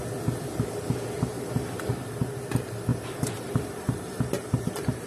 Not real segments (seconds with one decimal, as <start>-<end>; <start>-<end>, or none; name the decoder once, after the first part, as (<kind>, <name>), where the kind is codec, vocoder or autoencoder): 2.9-4.2 (vocoder, BigVGAN v2)

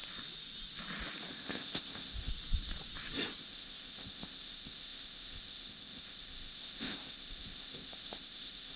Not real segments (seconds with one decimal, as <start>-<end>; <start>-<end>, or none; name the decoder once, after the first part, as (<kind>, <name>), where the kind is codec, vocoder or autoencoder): 1.3-2.3 (codec, ZipCodec); 3.4-8.8